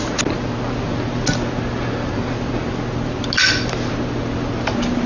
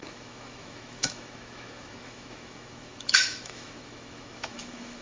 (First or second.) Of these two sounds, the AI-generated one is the second